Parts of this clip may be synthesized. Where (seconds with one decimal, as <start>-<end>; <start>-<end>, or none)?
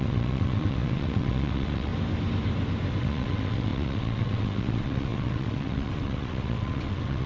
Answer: 0.0-1.9; 3.0-7.3